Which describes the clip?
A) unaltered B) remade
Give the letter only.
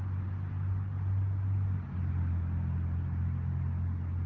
A